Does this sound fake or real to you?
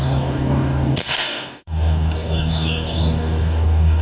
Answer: fake